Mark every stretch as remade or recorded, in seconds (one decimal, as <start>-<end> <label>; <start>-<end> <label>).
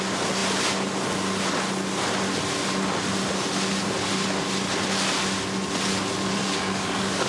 0.0-6.4 recorded; 6.4-7.3 remade